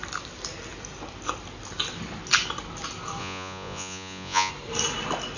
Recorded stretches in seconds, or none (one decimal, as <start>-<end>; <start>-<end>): 0.0-3.2; 4.5-5.4